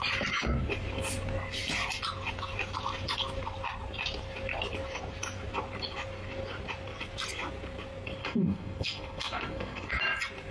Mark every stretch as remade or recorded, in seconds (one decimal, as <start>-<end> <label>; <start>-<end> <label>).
0.0-8.2 recorded; 8.2-9.9 remade; 9.9-10.5 recorded